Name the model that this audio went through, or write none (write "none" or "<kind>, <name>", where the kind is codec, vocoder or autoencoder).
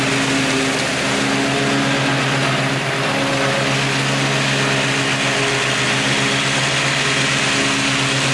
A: none